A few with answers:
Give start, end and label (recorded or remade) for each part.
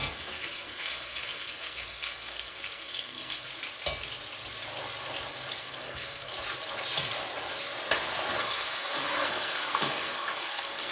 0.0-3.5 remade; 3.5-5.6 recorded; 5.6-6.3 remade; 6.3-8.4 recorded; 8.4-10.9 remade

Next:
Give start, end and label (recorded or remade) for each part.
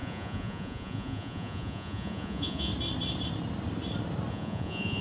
0.0-2.7 remade; 2.7-4.3 recorded; 4.3-5.0 remade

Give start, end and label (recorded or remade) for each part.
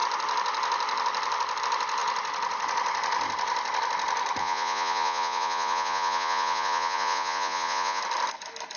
0.0-4.4 recorded; 4.4-8.0 remade; 8.0-8.8 recorded